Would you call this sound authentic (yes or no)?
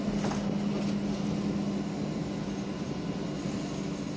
yes